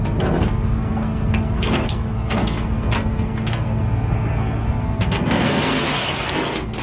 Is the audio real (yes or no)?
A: no